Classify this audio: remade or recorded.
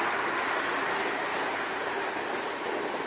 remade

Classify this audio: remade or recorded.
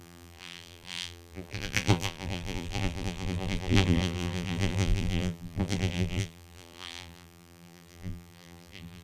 remade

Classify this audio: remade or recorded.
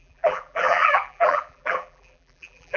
remade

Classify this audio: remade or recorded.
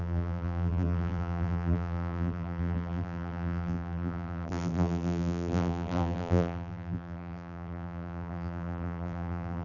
remade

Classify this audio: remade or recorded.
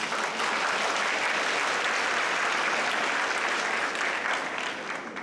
recorded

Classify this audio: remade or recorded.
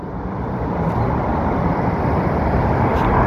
remade